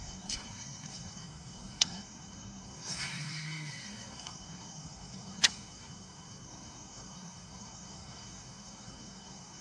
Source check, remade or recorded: remade